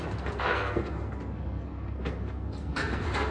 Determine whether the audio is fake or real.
fake